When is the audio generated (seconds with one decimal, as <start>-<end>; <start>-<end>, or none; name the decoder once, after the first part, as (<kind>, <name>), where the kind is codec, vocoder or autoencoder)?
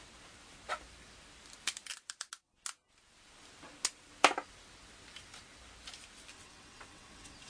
6.3-7.5 (vocoder, WaveNeXt)